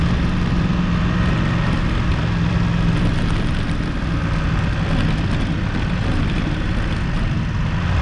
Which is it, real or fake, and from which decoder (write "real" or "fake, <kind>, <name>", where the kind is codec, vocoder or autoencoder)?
real